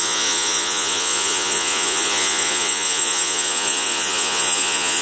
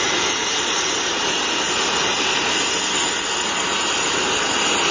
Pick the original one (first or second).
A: second